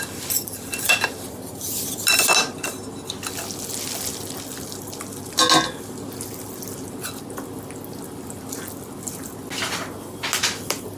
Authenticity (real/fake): real